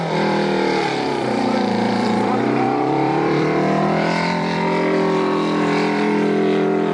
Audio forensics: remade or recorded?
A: remade